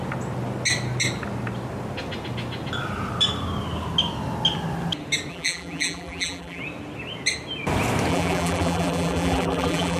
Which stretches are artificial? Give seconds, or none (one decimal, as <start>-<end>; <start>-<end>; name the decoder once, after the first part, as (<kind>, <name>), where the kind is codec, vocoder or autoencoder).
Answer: 5.3-6.6 (vocoder, BigVGAN v2); 8.1-10.0